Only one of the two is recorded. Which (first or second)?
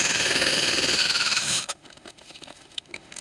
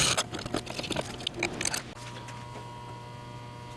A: second